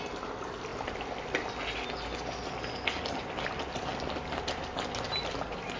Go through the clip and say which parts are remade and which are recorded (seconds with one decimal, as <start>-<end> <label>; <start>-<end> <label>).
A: 0.0-5.8 recorded

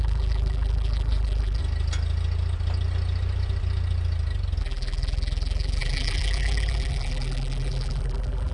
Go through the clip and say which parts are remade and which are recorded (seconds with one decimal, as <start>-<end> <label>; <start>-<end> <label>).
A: 0.0-1.6 remade; 1.6-4.6 recorded; 4.6-8.5 remade

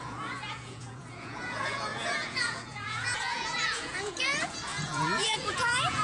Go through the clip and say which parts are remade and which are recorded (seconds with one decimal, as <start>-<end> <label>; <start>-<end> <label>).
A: 0.0-6.0 remade

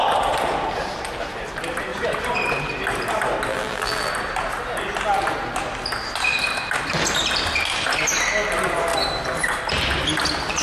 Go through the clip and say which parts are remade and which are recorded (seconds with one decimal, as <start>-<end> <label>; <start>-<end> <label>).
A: 0.0-3.5 recorded; 3.5-4.1 remade; 4.1-10.6 recorded

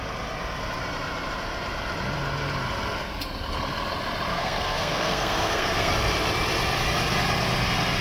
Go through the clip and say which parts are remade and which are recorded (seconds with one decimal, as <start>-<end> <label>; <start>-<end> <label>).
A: 0.0-4.3 recorded; 4.3-5.9 remade; 5.9-8.0 recorded

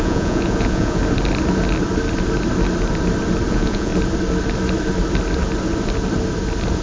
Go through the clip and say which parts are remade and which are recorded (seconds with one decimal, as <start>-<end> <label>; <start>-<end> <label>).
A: 0.0-1.0 remade; 1.0-3.5 recorded; 3.5-3.9 remade; 3.9-6.8 recorded

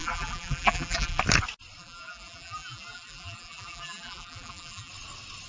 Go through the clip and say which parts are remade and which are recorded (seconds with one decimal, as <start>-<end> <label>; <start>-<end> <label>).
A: 0.0-1.2 remade; 1.2-1.8 recorded; 1.8-4.9 remade; 4.9-5.5 recorded